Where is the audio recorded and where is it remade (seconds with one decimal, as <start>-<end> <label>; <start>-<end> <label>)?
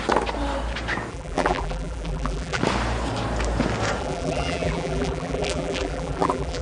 0.0-1.1 recorded; 1.1-2.6 remade; 2.6-4.0 recorded; 4.0-6.6 remade